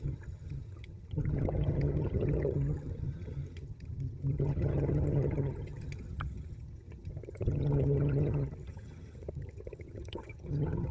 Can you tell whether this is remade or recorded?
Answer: remade